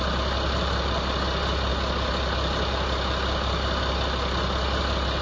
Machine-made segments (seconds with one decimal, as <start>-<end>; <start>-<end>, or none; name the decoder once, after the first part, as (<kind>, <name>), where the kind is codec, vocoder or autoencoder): none